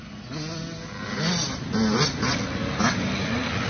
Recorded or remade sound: recorded